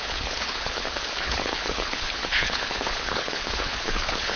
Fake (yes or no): yes